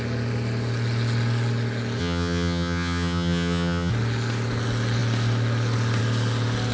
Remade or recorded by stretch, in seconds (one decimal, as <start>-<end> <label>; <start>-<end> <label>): 0.0-2.0 recorded; 2.0-3.9 remade; 3.9-6.7 recorded